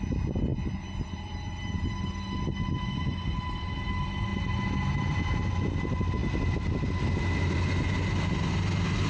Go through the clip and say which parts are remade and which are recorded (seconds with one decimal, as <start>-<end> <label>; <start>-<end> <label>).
0.0-0.5 recorded; 0.5-1.9 remade; 1.9-9.1 recorded